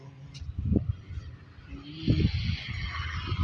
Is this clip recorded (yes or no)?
yes